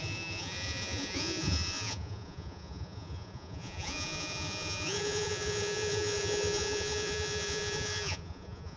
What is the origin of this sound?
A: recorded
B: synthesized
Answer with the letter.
B